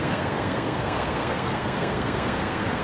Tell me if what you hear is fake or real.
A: fake